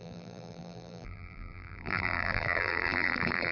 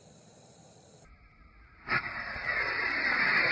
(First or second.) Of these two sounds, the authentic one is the second